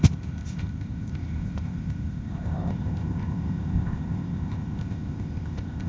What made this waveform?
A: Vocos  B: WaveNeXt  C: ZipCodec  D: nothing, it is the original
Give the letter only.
C